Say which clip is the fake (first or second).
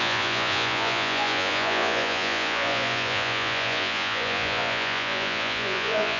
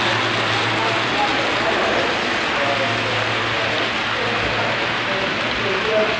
first